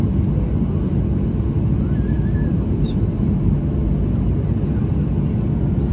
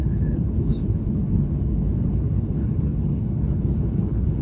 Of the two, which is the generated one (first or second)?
second